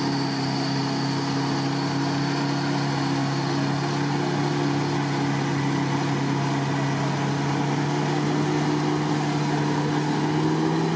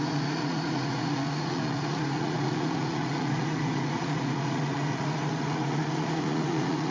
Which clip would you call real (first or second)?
first